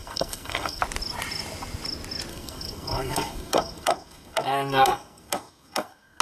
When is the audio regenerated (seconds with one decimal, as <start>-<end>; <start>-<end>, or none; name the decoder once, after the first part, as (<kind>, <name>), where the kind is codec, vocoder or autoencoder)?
0.0-0.8 (codec, SNAC); 2.3-6.2